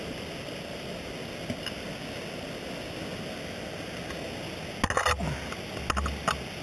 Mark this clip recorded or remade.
recorded